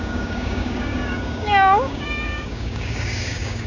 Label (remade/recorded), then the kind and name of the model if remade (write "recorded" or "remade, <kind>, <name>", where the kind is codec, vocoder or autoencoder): remade, codec, DAC